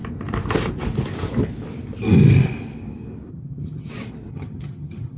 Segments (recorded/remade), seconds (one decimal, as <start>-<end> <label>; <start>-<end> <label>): 0.0-3.3 recorded; 3.3-3.9 remade; 3.9-4.3 recorded; 4.3-5.2 remade